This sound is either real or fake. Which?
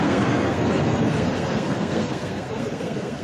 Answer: fake